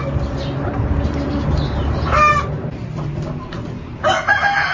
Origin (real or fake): fake